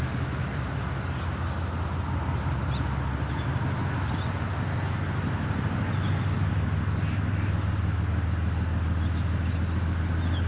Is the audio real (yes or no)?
yes